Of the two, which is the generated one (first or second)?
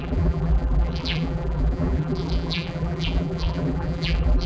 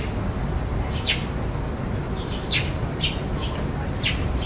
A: first